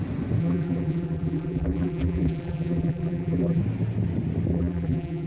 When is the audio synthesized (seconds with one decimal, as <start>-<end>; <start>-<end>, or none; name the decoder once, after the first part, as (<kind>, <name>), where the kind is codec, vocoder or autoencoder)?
0.4-3.6 (vocoder, BigVGAN v2); 4.5-5.3